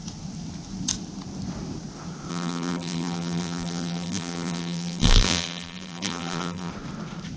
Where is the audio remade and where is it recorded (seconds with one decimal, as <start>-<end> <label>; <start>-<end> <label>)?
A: 0.0-2.3 recorded; 2.3-6.7 remade; 6.7-7.4 recorded